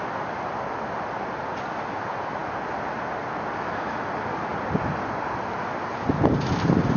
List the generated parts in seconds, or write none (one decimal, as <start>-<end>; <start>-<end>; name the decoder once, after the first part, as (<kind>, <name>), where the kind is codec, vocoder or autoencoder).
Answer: none